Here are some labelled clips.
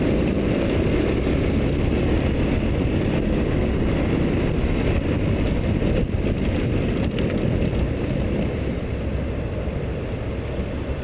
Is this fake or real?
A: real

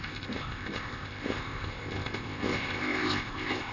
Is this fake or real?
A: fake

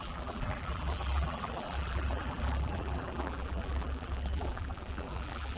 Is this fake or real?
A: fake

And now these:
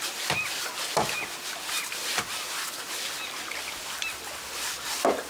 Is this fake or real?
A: fake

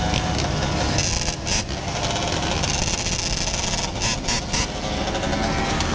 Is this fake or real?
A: real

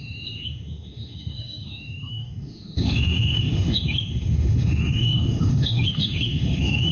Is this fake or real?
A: fake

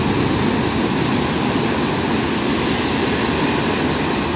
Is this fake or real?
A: real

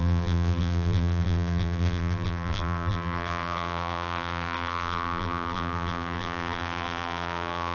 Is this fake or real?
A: fake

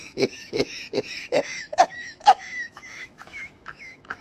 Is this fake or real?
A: fake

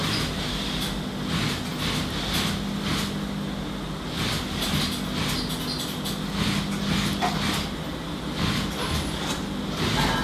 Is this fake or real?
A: real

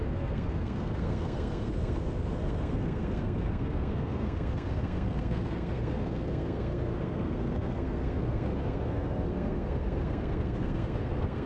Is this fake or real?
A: fake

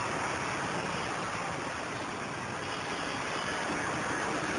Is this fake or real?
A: real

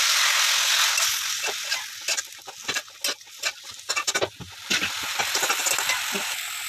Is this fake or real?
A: real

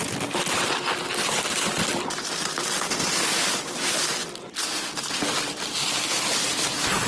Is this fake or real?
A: real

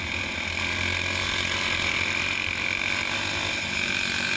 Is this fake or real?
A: real